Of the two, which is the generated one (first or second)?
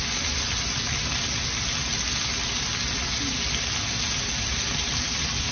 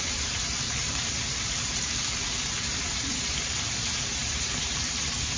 second